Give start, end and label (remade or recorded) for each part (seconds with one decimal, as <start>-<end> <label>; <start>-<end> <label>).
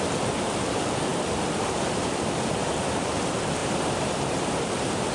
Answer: 0.0-3.6 recorded; 3.6-4.1 remade; 4.1-5.1 recorded